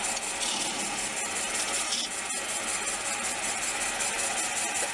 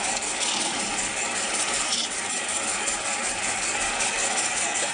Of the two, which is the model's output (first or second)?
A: second